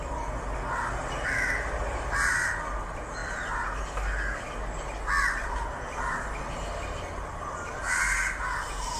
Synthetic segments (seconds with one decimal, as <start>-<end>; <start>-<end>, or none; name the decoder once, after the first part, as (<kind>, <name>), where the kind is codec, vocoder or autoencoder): none